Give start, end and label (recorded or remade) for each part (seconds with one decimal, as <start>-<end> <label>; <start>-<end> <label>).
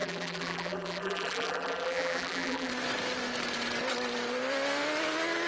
0.0-2.7 remade; 2.7-5.5 recorded